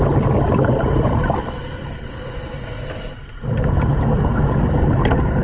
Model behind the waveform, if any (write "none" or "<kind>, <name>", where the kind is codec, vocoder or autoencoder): none